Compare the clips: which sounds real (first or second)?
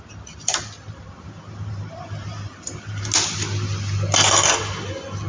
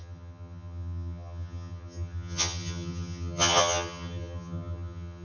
first